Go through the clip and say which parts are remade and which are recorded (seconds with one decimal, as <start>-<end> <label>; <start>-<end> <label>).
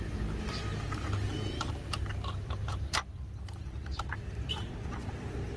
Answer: 0.0-3.1 recorded; 3.1-5.6 remade